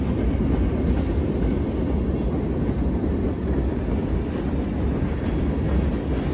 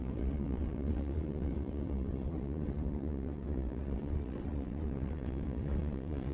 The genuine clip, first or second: first